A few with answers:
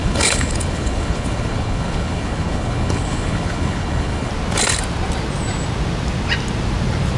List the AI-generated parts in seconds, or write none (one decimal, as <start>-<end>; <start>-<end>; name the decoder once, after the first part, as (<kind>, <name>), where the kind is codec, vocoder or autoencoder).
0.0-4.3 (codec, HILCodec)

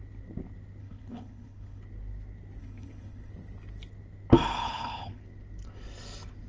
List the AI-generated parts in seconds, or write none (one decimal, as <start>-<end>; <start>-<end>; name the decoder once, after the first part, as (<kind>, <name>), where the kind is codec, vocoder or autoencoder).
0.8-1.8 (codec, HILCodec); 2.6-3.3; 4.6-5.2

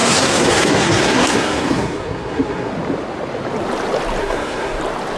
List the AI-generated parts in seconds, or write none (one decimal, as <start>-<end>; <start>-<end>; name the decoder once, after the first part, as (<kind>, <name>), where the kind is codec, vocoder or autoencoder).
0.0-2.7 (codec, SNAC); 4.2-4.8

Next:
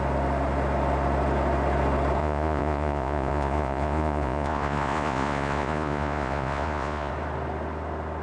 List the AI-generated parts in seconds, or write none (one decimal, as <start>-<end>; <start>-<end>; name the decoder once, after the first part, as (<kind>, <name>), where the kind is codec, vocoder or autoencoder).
2.2-7.1 (vocoder, Vocos)

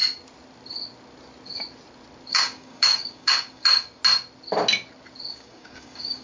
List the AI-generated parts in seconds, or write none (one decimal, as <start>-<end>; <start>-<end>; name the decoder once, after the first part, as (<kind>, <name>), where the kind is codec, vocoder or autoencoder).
2.3-4.0 (codec, DAC); 5.3-6.2

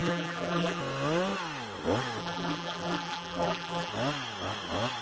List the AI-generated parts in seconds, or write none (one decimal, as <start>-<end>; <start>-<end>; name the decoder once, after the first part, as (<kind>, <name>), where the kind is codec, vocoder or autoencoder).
0.0-0.8 (vocoder, BigVGAN v2); 2.2-3.9

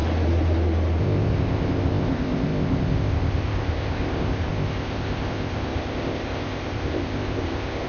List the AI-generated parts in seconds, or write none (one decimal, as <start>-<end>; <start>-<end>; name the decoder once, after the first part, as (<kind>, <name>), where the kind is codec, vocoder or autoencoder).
1.0-7.9 (codec, ZipCodec)